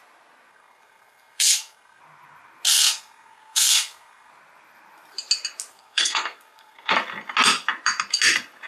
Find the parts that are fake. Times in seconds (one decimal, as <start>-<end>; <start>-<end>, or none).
0.5-2.0; 2.7-4.3; 5.7-6.9